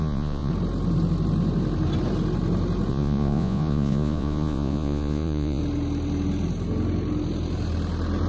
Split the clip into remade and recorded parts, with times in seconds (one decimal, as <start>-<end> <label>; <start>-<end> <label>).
0.0-0.5 remade; 0.5-2.9 recorded; 2.9-5.6 remade; 5.6-8.3 recorded